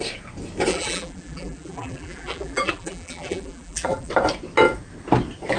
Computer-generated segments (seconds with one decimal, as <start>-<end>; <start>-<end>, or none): 0.7-4.1